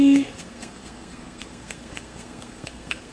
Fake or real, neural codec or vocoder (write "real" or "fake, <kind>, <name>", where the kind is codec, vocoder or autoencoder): fake, codec, SNAC